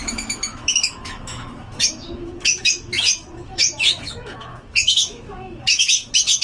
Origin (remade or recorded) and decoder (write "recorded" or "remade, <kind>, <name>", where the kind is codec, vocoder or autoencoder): remade, autoencoder, DAC-VAE